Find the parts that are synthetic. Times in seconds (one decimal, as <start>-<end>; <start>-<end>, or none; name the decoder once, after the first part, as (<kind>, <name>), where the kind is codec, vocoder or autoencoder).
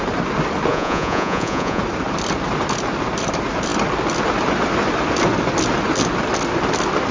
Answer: 0.7-1.8 (vocoder, Vocos)